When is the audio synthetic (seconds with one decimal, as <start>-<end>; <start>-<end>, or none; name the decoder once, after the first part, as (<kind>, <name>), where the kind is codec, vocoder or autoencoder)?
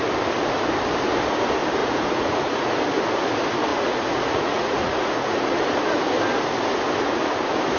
1.8-2.7 (vocoder, Vocos); 3.7-5.6